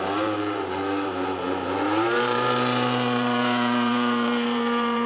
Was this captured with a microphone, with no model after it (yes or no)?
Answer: no